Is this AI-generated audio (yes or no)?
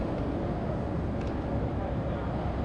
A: no